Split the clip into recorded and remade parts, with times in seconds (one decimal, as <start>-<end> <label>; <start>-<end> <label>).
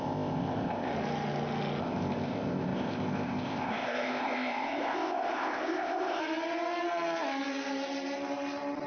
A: 0.0-0.9 remade; 0.9-1.8 recorded; 1.8-6.2 remade; 6.2-8.9 recorded